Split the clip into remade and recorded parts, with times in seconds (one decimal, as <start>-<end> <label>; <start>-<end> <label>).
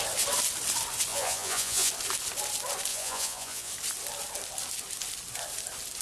0.0-1.1 recorded; 1.1-1.9 remade; 1.9-2.9 recorded; 2.9-3.7 remade; 3.7-6.0 recorded